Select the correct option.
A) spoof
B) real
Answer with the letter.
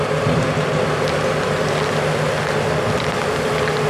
B